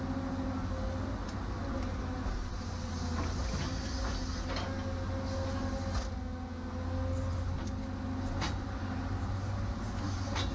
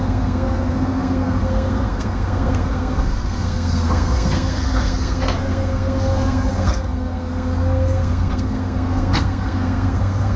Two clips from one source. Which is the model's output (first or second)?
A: second